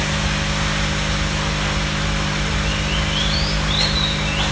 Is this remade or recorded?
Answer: recorded